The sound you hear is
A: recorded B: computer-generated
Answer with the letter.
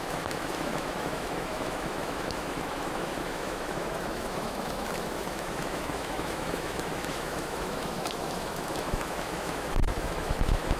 B